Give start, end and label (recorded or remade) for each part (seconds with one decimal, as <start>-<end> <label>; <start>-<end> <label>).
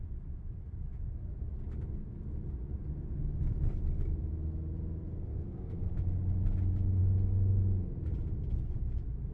0.0-5.3 recorded; 5.3-5.9 remade; 5.9-9.3 recorded